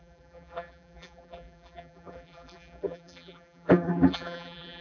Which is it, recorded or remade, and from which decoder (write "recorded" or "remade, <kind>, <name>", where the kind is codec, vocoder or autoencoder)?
remade, vocoder, BigVGAN v2